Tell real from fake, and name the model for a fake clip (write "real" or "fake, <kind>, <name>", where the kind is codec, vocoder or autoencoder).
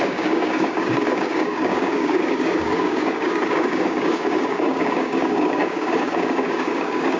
fake, codec, DAC